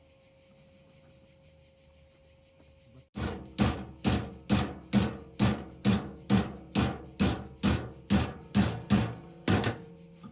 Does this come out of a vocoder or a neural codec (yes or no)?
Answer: no